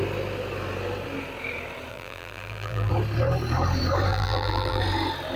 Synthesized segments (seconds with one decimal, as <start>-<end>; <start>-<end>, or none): 1.9-2.9; 4.1-4.8